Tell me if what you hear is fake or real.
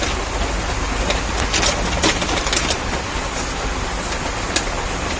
real